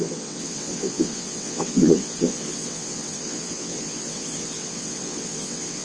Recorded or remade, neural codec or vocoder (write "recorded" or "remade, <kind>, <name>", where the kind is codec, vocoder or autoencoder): remade, vocoder, WaveNeXt